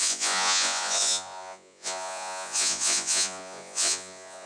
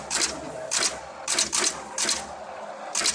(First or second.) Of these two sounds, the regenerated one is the first